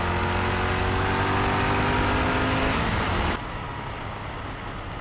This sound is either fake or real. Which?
real